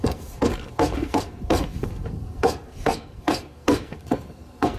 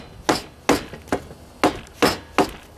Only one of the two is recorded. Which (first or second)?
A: second